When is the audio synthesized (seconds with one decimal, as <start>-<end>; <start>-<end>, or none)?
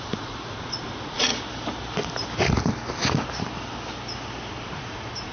0.0-1.3; 4.5-5.3